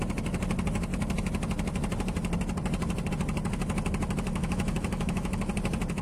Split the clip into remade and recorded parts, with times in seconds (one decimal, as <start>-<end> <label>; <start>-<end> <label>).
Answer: 0.0-4.3 recorded; 4.3-5.5 remade; 5.5-6.0 recorded